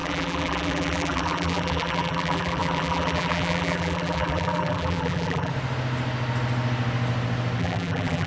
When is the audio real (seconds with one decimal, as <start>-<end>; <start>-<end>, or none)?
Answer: 5.5-7.6